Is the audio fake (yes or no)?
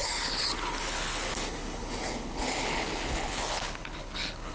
yes